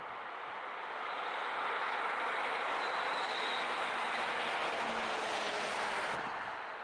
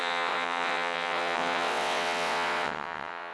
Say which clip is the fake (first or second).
second